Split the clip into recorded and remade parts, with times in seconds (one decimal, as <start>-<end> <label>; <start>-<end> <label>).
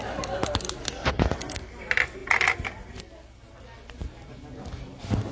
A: 0.0-5.3 recorded